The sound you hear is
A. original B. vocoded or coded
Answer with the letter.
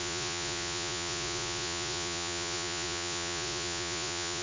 B